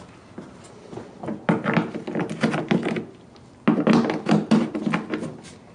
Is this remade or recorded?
recorded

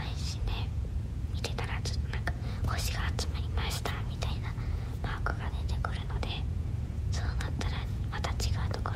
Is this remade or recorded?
remade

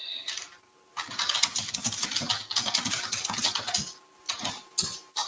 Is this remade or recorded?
recorded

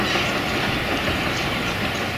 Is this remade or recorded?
recorded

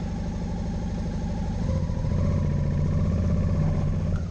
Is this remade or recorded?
recorded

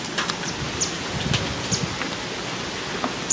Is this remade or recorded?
recorded